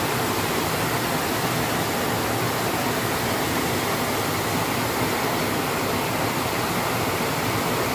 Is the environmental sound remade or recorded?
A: recorded